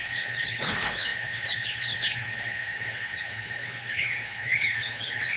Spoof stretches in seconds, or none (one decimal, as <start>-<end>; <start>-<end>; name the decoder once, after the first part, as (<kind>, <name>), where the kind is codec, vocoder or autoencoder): 0.0-5.4 (codec, HILCodec)